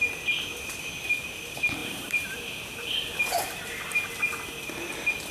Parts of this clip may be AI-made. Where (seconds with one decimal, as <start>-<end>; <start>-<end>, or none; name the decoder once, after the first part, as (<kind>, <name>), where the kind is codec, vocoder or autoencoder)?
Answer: 1.8-3.1 (vocoder, BigVGAN v2)